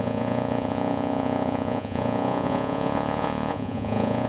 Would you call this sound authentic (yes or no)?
no